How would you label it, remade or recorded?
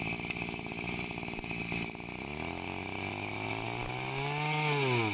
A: recorded